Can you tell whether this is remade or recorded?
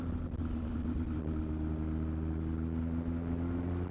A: recorded